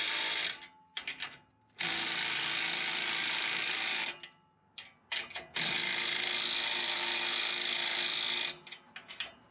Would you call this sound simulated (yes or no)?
no